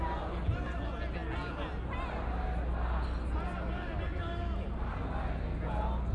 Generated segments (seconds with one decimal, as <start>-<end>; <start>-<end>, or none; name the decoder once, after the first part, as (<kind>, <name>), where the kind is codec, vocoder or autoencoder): none